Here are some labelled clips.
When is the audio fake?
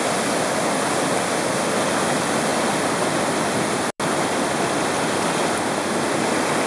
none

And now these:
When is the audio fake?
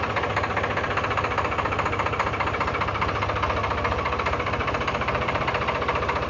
4.6-5.4 (vocoder, BigVGAN v2)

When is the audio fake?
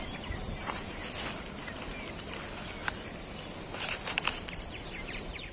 0.0-1.0 (vocoder, BigVGAN v2); 3.6-5.5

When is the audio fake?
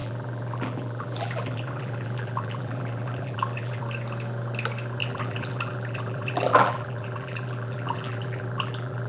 0.0-3.8 (vocoder, BigVGAN v2); 5.0-9.1